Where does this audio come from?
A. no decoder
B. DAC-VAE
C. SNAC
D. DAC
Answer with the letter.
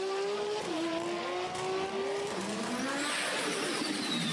A